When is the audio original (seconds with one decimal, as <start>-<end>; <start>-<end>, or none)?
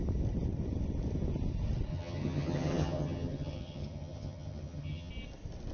0.0-1.9; 5.1-5.7